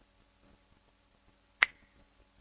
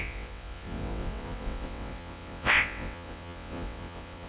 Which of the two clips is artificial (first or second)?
second